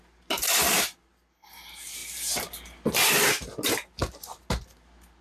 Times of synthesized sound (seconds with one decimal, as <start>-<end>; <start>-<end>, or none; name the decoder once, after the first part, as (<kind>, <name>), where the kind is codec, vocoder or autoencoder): none